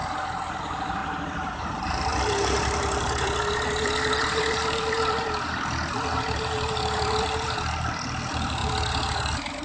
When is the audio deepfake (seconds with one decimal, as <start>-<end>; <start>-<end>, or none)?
0.6-1.0; 1.5-8.6